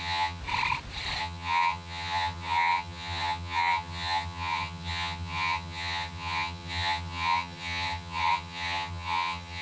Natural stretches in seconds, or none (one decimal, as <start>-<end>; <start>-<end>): 0.4-1.2